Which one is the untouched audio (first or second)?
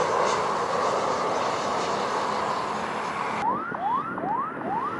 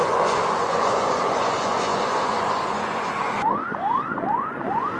first